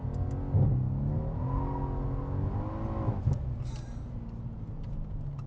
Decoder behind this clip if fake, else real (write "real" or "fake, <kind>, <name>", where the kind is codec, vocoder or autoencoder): real